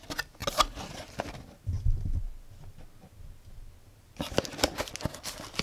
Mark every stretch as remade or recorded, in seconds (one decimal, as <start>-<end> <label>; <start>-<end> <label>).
0.0-5.6 recorded